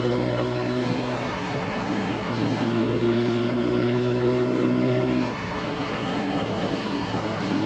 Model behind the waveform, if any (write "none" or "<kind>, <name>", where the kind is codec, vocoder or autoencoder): codec, SNAC